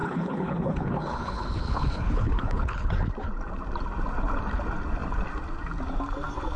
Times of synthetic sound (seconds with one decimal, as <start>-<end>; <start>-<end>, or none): 0.0-2.9

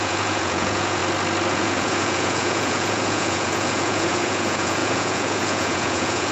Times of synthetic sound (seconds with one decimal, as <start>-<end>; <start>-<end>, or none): 0.0-1.0; 1.5-6.3

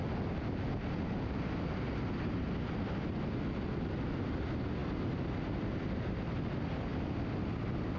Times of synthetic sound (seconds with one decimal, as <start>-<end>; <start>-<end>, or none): none

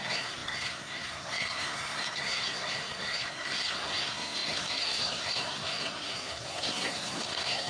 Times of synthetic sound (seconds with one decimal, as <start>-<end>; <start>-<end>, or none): 0.0-7.7

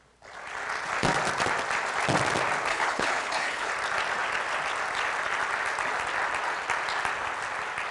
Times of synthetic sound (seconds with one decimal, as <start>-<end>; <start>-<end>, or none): 2.7-3.7